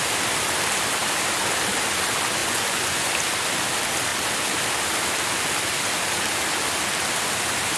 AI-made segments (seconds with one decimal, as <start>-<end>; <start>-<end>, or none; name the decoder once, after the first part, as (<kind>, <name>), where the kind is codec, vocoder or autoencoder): 2.4-3.1 (vocoder, Vocos)